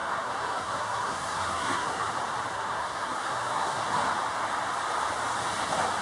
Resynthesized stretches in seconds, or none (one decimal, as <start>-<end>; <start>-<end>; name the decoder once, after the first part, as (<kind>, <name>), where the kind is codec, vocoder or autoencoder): 0.0-2.1 (codec, SNAC); 2.5-3.8